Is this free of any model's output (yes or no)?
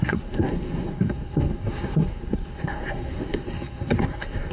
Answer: no